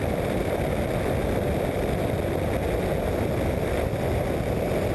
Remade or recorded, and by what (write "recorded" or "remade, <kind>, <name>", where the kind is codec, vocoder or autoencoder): recorded